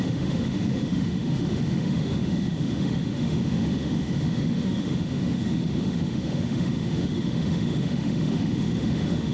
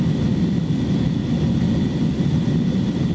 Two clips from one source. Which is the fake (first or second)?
first